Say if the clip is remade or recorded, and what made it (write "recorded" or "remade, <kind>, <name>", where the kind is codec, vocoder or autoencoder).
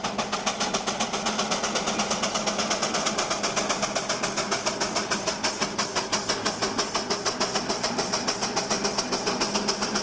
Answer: recorded